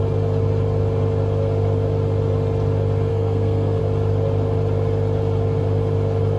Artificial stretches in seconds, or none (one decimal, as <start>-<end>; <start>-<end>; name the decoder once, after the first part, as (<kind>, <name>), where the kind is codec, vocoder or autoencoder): 3.1-3.8 (codec, SNAC)